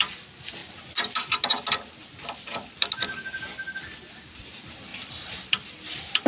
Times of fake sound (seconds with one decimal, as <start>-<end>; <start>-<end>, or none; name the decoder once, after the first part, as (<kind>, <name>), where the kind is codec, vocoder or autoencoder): 0.0-0.6 (vocoder, BigVGAN v2); 4.4-6.3